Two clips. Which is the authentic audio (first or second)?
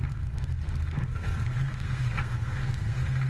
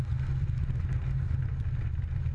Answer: second